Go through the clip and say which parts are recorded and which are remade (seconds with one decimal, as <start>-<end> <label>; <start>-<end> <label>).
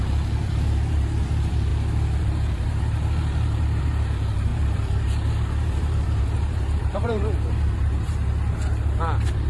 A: 0.0-1.7 remade; 1.7-2.2 recorded; 2.2-8.2 remade; 8.2-9.5 recorded